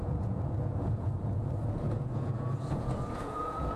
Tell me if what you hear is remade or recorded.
remade